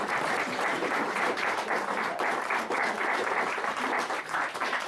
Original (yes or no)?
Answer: no